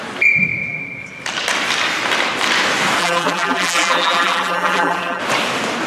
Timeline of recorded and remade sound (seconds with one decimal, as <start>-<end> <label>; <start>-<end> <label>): 0.0-3.0 recorded; 3.0-5.2 remade; 5.2-5.9 recorded